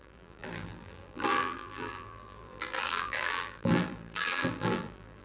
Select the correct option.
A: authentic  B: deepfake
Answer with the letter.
B